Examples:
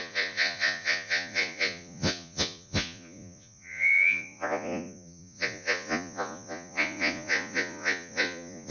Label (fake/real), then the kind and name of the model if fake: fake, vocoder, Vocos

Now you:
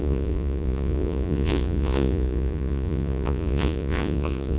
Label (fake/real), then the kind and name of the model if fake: fake, vocoder, Vocos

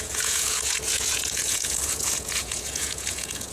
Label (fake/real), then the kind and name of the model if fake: fake, vocoder, Vocos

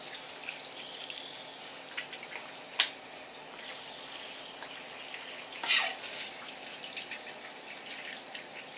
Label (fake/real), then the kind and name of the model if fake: real